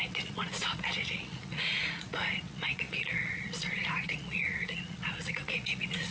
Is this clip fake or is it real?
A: fake